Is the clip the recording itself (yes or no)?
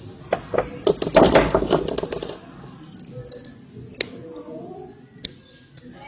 yes